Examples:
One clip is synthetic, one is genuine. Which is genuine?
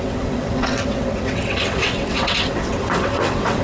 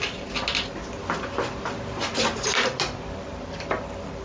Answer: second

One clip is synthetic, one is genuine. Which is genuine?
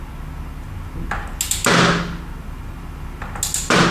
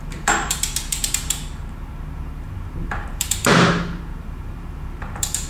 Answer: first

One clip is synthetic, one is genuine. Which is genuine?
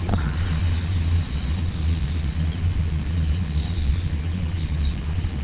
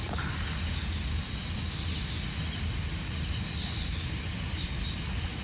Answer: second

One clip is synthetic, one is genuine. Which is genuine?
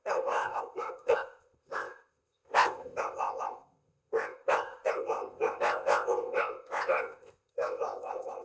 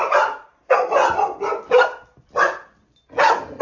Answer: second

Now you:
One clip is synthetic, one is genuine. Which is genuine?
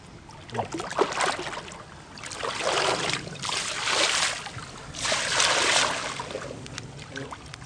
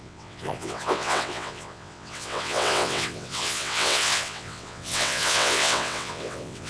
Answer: first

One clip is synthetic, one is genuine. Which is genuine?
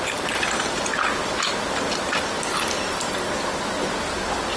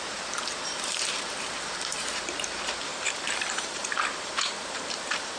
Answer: first